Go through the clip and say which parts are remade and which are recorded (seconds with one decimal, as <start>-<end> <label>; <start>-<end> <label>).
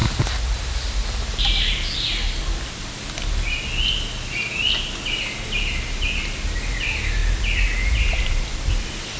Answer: 0.0-9.2 recorded